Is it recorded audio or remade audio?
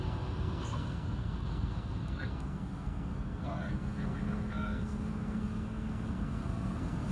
remade